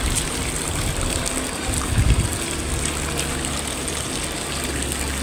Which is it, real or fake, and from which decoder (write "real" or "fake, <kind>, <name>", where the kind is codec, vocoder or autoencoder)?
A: real